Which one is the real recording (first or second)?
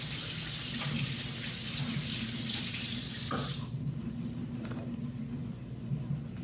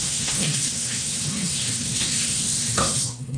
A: first